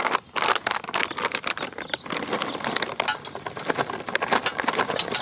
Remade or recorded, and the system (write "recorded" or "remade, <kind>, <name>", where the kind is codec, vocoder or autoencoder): recorded